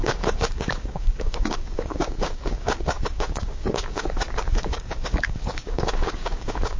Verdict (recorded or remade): remade